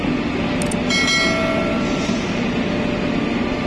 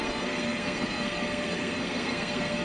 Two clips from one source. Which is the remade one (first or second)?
second